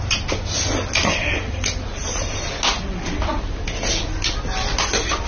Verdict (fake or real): real